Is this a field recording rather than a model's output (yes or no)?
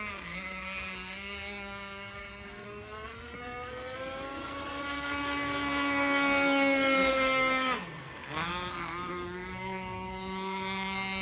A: no